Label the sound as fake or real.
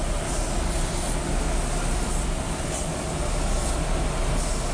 real